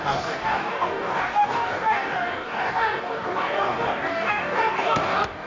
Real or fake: fake